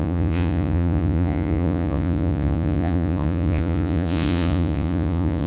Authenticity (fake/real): fake